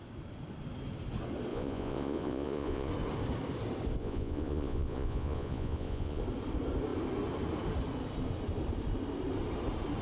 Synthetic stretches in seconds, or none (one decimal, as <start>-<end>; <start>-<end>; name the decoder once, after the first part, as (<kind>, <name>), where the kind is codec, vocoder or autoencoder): 1.5-2.9 (vocoder, Vocos); 4.0-6.2